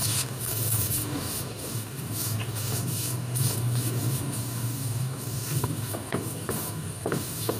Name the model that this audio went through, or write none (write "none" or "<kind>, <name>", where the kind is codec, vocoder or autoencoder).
codec, DAC